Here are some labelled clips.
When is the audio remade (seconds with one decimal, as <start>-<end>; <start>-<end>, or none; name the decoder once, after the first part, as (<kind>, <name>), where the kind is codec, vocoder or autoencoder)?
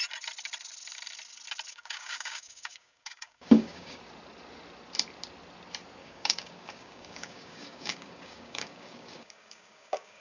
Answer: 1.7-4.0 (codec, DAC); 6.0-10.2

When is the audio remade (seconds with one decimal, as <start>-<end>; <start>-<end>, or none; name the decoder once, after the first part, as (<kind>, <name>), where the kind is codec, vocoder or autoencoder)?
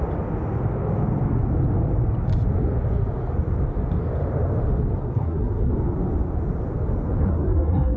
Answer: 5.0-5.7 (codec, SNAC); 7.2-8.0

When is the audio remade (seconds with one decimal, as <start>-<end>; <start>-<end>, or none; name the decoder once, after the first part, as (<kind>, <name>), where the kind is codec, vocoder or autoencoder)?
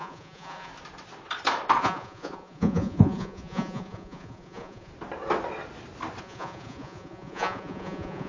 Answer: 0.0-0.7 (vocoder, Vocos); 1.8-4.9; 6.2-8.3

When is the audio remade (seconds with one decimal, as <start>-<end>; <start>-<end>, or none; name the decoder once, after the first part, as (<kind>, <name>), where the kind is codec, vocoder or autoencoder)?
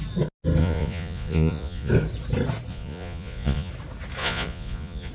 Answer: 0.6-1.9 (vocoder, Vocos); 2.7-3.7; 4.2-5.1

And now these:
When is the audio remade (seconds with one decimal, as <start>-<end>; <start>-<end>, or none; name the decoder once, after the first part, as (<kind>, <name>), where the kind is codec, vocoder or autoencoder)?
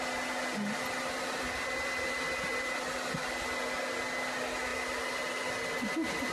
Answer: none